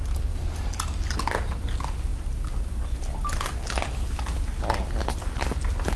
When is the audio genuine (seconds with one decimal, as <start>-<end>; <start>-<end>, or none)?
0.0-6.0